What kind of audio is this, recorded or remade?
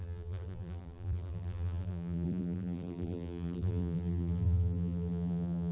remade